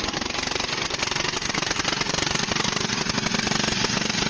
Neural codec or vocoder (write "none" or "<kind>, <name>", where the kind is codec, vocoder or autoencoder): vocoder, BigVGAN v2